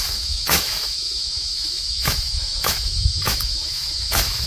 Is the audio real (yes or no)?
no